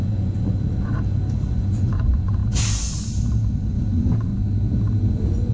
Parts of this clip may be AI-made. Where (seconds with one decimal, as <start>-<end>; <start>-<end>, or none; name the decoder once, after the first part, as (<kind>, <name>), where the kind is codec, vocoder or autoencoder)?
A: 0.0-0.9 (vocoder, Vocos); 1.5-2.4; 3.8-4.3; 5.1-5.5